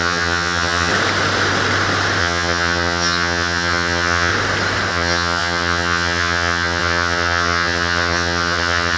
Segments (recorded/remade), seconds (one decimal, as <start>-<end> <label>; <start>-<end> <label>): 0.0-0.9 remade; 0.9-2.2 recorded; 2.2-4.3 remade; 4.3-4.9 recorded; 4.9-9.0 remade